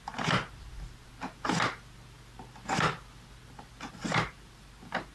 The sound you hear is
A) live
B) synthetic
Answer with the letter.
A